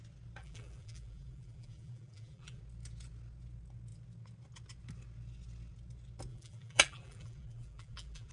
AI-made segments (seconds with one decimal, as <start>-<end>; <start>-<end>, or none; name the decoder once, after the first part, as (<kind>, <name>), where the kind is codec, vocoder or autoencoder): 0.4-2.6 (vocoder, BigVGAN v2); 6.3-8.3